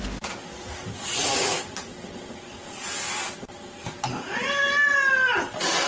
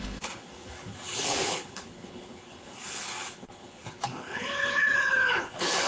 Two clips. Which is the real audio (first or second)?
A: first